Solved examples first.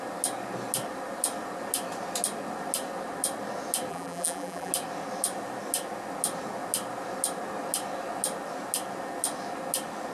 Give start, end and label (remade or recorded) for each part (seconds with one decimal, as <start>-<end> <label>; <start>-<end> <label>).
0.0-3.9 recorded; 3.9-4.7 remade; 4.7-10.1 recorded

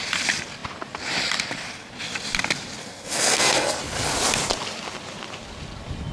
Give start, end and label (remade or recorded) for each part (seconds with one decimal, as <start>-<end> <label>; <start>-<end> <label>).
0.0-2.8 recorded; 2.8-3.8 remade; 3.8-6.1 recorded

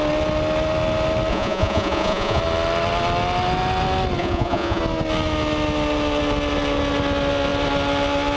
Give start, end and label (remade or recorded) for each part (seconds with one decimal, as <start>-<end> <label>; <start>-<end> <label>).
0.0-1.3 recorded; 1.3-2.4 remade; 2.4-4.2 recorded; 4.2-4.8 remade; 4.8-8.4 recorded